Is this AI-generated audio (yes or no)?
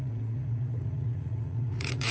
yes